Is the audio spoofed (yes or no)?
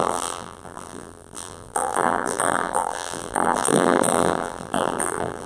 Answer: yes